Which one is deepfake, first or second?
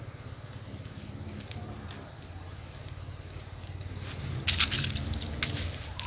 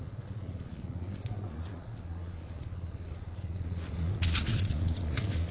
second